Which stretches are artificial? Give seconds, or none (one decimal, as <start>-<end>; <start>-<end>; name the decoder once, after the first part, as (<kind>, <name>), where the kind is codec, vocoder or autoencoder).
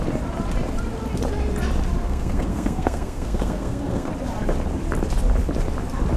2.0-4.1 (codec, SNAC)